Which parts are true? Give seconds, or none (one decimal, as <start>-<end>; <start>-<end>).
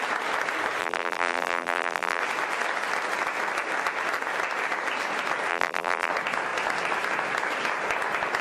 0.0-0.8; 2.2-5.5; 6.1-8.4